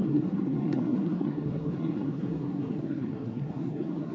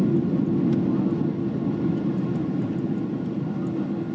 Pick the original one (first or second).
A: second